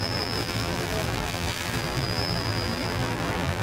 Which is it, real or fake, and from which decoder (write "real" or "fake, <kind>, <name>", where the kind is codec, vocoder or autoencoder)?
fake, vocoder, BigVGAN v2